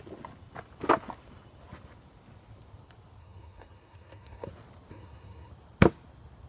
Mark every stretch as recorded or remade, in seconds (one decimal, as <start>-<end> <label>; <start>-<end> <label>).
0.0-3.2 recorded; 3.2-4.5 remade; 4.5-4.9 recorded; 4.9-5.5 remade; 5.5-6.5 recorded